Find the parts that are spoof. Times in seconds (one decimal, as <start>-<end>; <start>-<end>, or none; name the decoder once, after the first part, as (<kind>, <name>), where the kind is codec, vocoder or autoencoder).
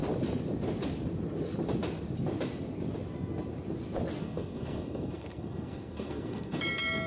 4.2-6.6 (codec, SNAC)